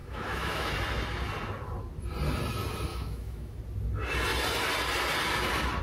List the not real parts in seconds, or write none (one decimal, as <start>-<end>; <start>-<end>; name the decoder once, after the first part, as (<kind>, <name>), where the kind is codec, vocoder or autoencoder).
0.0-0.7 (autoencoder, DAC-VAE); 2.9-3.6